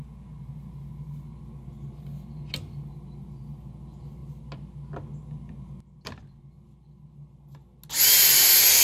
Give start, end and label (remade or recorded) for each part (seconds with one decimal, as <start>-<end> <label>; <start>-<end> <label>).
0.0-8.8 recorded